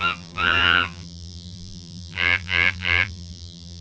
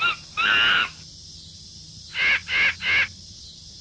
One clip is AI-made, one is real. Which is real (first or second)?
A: second